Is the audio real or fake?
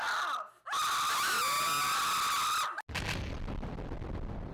real